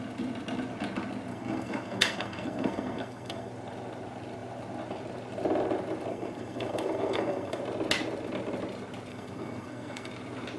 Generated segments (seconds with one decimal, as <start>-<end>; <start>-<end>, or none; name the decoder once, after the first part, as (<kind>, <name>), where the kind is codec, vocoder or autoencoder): 1.3-3.5 (codec, SNAC); 6.1-7.6; 9.1-10.1